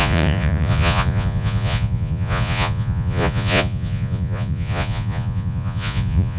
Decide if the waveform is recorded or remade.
remade